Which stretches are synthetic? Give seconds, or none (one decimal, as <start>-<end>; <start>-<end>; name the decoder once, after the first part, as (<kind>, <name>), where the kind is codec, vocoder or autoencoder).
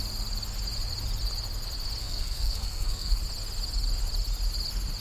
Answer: 2.0-3.2 (codec, SNAC)